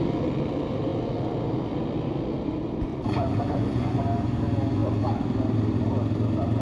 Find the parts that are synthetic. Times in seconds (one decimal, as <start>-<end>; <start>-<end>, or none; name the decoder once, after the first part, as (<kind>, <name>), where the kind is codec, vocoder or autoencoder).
2.9-4.0 (vocoder, Vocos)